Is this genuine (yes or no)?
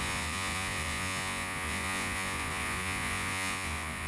no